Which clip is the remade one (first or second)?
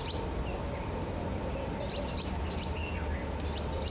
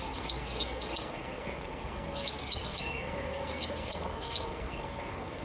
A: second